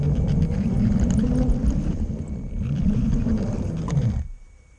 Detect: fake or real fake